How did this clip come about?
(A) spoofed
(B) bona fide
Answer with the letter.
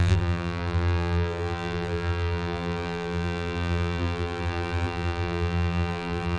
A